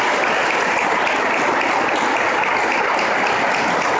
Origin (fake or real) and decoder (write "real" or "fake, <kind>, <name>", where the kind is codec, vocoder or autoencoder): real